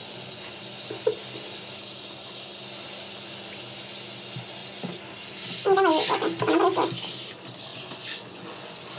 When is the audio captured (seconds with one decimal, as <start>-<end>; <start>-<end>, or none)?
0.5-7.7